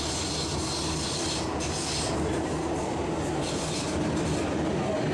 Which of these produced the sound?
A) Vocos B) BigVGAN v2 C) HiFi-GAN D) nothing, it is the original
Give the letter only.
D